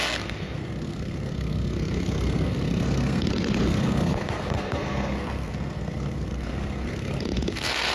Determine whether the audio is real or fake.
fake